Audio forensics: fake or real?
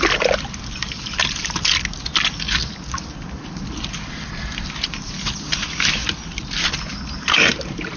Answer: real